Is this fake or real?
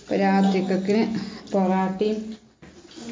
real